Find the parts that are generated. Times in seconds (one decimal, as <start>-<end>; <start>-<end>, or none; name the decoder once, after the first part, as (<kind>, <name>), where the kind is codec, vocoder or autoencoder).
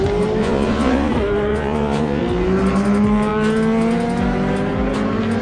0.4-1.1 (vocoder, Vocos); 1.5-2.2